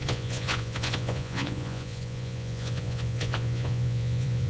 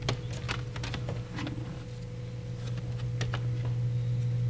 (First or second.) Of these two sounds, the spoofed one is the first